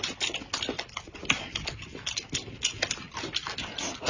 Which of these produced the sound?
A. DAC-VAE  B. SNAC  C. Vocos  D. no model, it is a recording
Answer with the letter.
D